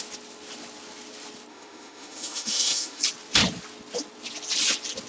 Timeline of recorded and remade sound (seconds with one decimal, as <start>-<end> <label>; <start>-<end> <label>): 0.0-1.5 recorded; 1.5-3.0 remade; 3.0-5.1 recorded